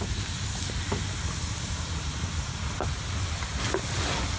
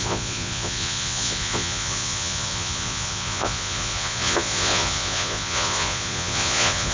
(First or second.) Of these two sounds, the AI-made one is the second